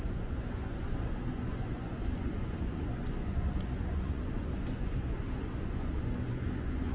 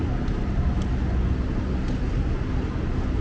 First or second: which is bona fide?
second